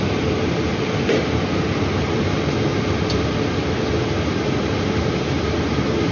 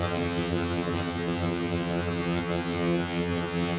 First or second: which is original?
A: first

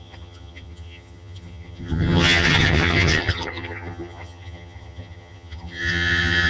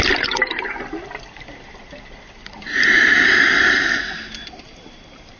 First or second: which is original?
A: second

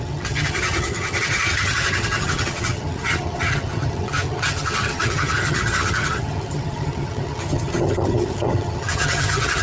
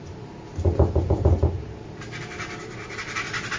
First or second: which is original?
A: second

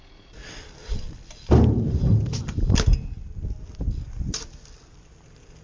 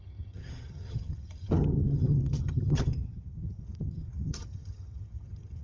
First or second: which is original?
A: first